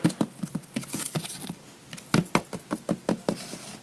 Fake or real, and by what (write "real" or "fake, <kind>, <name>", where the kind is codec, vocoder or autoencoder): real